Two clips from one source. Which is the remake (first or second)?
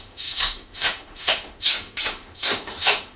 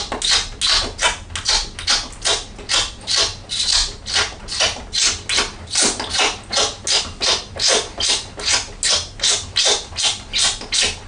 first